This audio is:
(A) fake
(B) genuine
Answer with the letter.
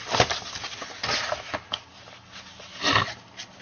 B